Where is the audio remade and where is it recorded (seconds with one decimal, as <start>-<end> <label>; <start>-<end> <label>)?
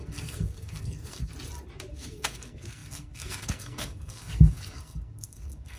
0.0-1.3 remade; 1.3-1.9 recorded; 1.9-5.8 remade